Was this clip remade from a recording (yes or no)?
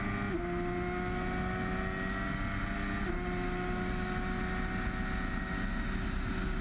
no